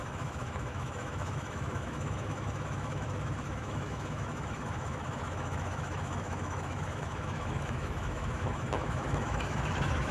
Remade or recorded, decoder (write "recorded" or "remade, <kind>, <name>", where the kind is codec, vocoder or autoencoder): remade, autoencoder, DAC-VAE